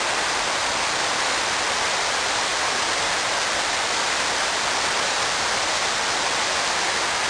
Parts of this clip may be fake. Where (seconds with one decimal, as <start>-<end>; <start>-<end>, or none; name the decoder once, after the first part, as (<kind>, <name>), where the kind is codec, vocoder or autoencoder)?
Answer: none